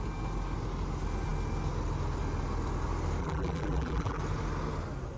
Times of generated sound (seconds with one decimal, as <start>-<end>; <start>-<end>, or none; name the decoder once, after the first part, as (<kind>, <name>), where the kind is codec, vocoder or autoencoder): 3.2-4.2 (vocoder, BigVGAN v2)